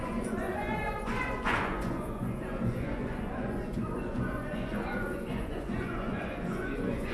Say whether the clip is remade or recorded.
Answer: remade